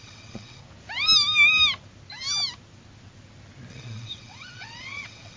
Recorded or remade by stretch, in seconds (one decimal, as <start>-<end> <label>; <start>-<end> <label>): 0.0-0.6 remade; 0.6-3.7 recorded; 3.7-5.4 remade